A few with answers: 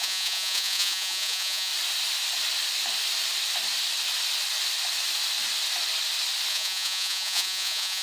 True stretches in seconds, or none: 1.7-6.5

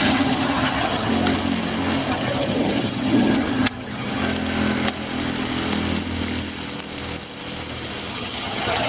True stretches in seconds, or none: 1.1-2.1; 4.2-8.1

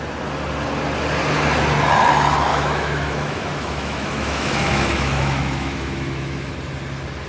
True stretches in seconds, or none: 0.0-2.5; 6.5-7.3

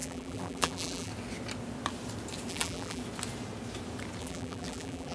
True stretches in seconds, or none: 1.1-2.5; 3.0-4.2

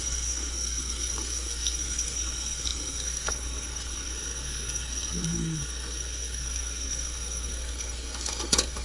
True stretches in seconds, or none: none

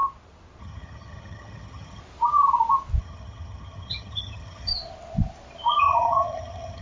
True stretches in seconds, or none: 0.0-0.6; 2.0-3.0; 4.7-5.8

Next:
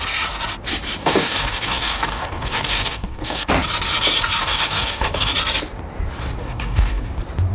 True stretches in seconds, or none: 0.0-1.0; 3.5-4.4; 5.3-6.4; 7.1-7.5

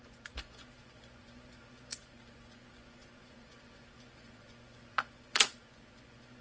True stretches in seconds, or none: none